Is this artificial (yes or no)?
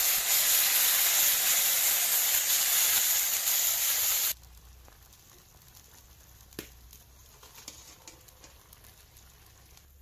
no